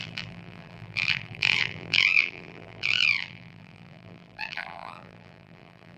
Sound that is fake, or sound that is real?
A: fake